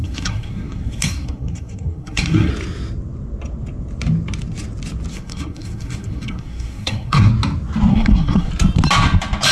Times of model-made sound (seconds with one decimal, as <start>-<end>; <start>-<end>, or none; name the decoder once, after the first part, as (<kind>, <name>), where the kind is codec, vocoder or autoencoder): 0.0-2.5 (codec, SNAC); 5.1-7.3; 7.9-8.5